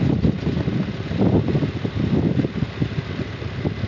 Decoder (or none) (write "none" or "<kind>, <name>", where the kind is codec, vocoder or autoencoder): none